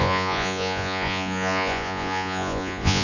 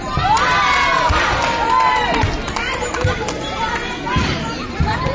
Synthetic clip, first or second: first